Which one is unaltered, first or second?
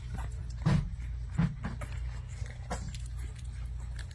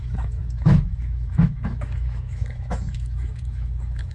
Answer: first